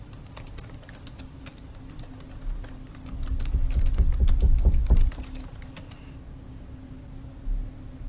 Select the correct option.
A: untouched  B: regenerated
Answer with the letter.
A